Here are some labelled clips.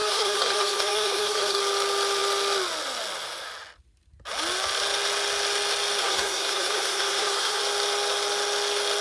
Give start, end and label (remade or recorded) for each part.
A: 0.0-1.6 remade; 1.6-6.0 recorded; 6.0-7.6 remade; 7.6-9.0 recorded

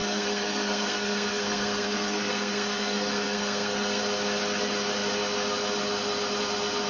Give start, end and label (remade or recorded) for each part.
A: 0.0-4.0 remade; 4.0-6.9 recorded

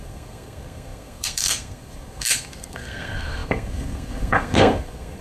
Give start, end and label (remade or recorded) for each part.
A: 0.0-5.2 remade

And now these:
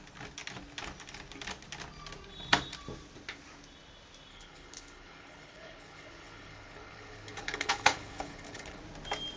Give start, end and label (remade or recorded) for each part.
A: 0.0-4.3 recorded; 4.3-8.8 remade; 8.8-9.4 recorded

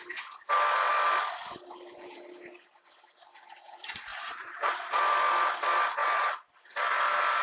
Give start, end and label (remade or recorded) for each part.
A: 0.0-4.1 recorded; 4.1-5.0 remade; 5.0-7.4 recorded

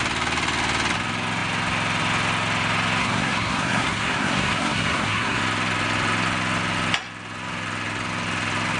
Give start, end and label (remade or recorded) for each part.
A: 0.0-3.0 recorded; 3.0-5.4 remade; 5.4-8.8 recorded

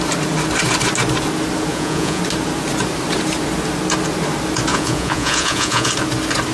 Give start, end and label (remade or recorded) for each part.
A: 0.0-1.7 recorded; 1.7-2.2 remade; 2.2-4.7 recorded; 4.7-5.9 remade; 5.9-6.5 recorded